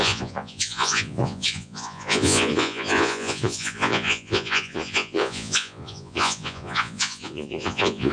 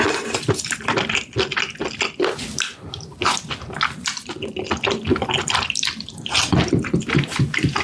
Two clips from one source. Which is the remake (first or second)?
first